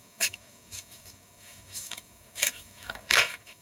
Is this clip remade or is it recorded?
remade